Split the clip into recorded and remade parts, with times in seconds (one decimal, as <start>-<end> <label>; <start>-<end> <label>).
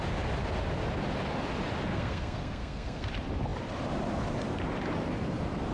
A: 0.0-1.9 recorded; 1.9-3.1 remade; 3.1-5.7 recorded